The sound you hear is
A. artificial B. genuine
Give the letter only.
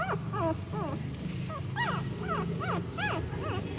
B